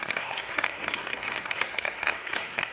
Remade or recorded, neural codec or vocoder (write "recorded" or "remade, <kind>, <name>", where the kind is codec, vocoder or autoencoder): remade, codec, SNAC